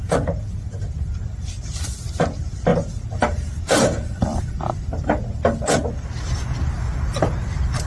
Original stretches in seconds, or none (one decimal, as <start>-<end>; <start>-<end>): 0.0-2.7; 5.0-7.9